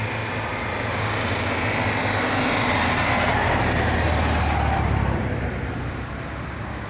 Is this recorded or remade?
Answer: recorded